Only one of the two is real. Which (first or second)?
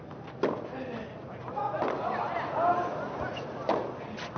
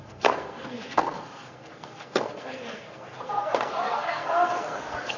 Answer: first